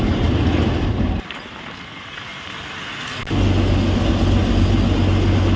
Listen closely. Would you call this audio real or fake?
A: real